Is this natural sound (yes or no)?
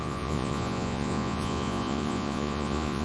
no